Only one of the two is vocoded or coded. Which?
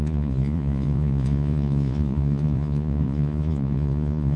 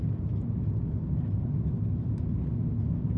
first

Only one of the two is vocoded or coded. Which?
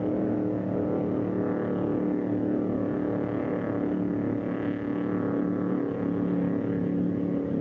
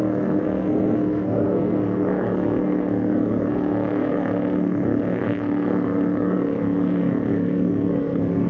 second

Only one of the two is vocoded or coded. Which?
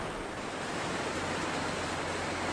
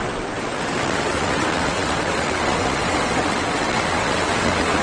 second